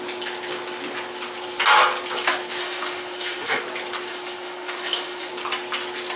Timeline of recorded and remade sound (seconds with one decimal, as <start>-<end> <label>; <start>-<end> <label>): 0.0-2.6 recorded; 2.6-3.6 remade; 3.6-4.1 recorded; 4.1-5.3 remade; 5.3-6.2 recorded